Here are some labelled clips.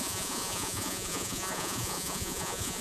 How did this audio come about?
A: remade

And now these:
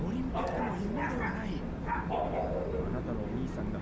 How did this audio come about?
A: recorded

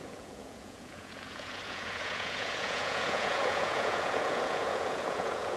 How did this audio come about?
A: remade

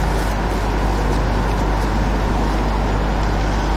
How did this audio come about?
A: recorded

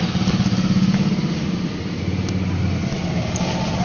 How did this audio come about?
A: recorded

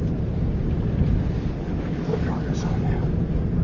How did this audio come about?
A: recorded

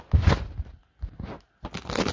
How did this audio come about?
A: recorded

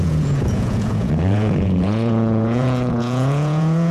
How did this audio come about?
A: remade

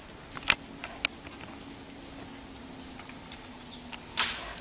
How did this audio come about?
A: recorded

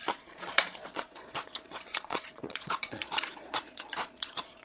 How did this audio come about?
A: remade